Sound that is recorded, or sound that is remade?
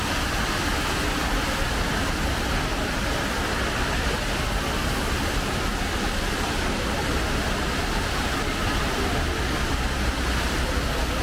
recorded